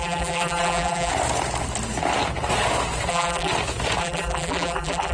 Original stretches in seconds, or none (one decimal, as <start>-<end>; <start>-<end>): 1.1-3.1; 3.5-4.0